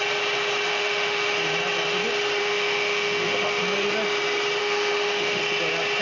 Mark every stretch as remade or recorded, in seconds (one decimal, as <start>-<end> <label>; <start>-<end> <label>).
0.0-0.7 recorded; 0.7-1.4 remade; 1.4-2.4 recorded; 2.4-3.6 remade; 3.6-4.6 recorded; 4.6-5.4 remade; 5.4-6.0 recorded